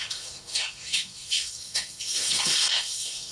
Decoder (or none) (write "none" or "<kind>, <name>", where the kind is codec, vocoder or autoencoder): codec, SNAC